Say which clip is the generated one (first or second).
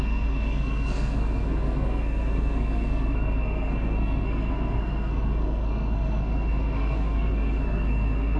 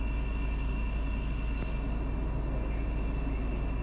first